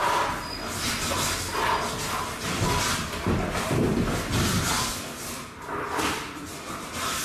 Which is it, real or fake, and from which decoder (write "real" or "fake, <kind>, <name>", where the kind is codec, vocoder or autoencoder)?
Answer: real